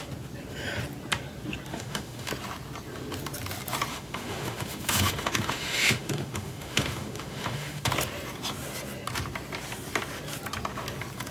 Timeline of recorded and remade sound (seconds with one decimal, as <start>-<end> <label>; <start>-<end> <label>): 0.0-1.7 recorded; 1.7-2.3 remade; 2.3-3.9 recorded; 3.9-7.9 remade; 7.9-11.3 recorded

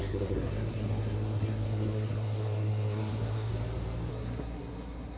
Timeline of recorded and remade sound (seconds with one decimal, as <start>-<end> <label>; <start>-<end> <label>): 0.0-3.5 remade; 3.5-4.1 recorded; 4.1-5.2 remade

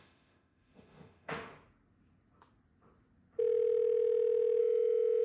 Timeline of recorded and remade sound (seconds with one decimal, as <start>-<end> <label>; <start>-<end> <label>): 0.0-1.5 remade; 1.5-4.6 recorded; 4.6-5.2 remade

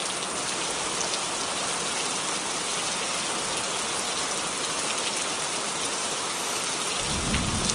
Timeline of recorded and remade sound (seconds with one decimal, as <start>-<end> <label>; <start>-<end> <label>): 0.0-6.0 recorded; 6.0-6.6 remade; 6.6-7.7 recorded

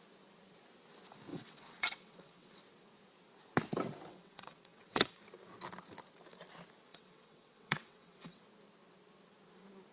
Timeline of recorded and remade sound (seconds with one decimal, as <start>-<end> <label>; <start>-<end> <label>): 0.0-1.3 recorded; 1.3-2.6 remade; 2.6-4.1 recorded; 4.1-5.2 remade; 5.2-6.9 recorded; 6.9-8.4 remade; 8.4-9.9 recorded

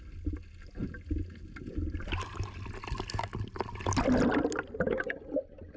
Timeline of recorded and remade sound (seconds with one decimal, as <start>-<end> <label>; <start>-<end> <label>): 0.0-5.8 recorded

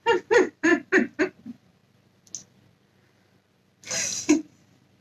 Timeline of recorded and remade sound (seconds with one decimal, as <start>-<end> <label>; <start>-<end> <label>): 0.0-0.7 remade; 0.7-1.2 recorded; 1.2-1.8 remade; 1.8-4.2 recorded; 4.2-5.0 remade